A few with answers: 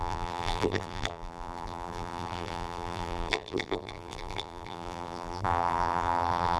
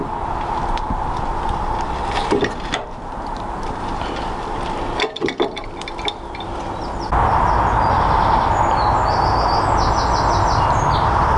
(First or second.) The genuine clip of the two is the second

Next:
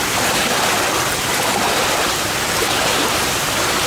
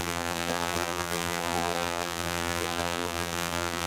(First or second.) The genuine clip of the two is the first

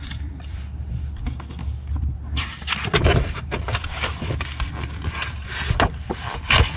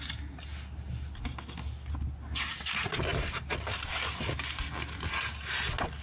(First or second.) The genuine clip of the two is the second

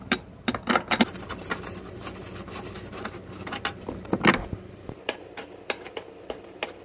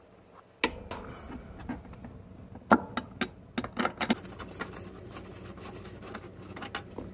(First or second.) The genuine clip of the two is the second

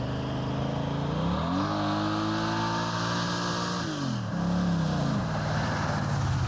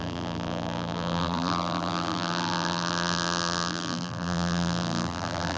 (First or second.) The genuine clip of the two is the first